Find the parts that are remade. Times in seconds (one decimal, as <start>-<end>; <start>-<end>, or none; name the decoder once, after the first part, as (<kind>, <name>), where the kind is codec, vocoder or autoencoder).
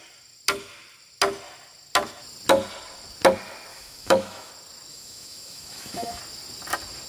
3.7-4.5 (autoencoder, DAC-VAE); 4.9-6.2